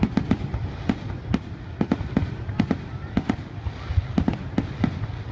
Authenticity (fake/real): real